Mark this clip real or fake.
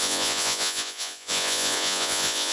fake